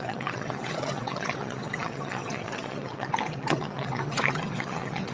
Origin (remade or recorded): remade